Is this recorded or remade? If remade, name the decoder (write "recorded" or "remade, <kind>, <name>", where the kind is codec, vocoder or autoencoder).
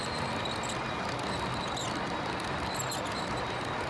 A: recorded